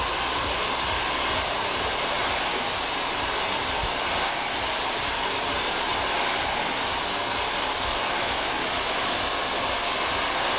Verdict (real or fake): real